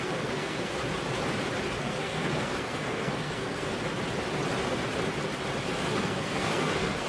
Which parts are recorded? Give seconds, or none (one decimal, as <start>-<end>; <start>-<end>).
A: 0.8-1.8; 3.7-5.7